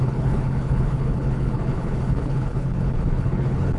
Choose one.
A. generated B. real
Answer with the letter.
A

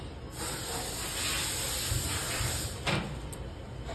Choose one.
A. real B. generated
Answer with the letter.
A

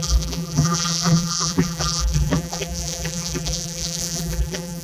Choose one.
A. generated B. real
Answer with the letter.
A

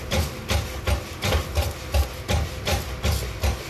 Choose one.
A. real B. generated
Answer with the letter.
A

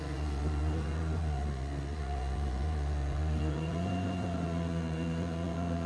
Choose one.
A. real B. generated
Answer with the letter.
B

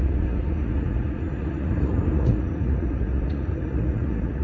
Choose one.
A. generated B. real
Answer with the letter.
A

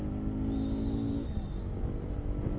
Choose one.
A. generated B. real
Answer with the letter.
B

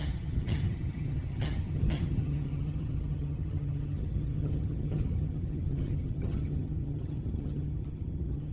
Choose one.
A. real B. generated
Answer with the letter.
B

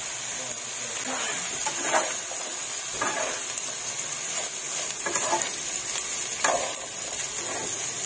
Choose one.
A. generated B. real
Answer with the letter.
B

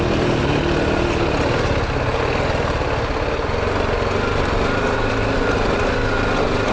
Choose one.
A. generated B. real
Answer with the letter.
B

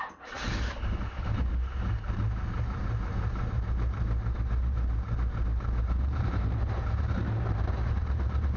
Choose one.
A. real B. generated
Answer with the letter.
B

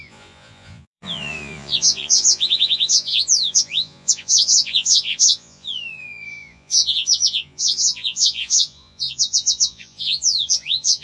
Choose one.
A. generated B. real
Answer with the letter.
A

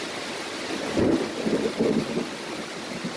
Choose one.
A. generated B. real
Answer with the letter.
B